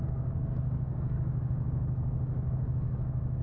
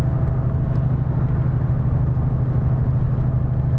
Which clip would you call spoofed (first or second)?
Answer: first